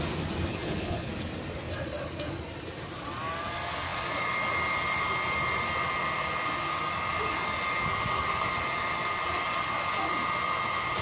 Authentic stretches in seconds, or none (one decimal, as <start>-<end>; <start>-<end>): 0.0-0.5; 1.1-11.0